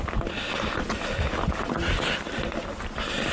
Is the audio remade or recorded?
remade